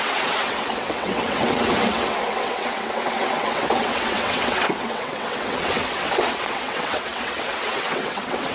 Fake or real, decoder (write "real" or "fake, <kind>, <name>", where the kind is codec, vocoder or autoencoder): fake, vocoder, WaveNeXt